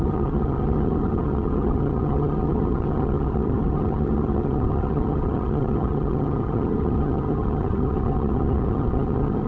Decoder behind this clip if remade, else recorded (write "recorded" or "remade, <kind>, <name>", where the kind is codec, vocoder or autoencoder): remade, vocoder, HiFi-GAN